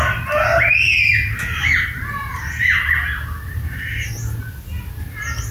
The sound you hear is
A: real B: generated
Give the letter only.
A